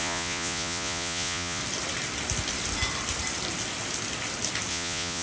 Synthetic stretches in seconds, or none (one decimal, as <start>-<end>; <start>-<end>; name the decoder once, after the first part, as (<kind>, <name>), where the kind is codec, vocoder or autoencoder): 0.0-1.6 (vocoder, Vocos); 4.7-5.2